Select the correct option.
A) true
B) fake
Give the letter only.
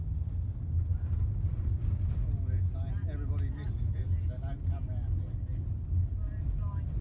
A